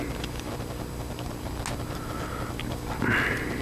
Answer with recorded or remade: recorded